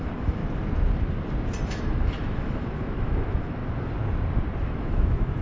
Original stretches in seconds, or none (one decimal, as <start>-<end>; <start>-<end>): 0.4-1.7; 3.6-4.6